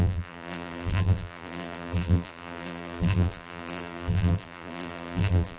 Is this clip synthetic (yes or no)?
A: yes